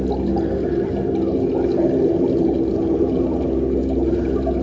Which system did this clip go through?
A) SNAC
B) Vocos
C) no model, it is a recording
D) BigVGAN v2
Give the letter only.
C